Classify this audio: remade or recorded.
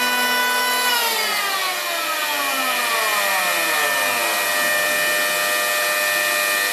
recorded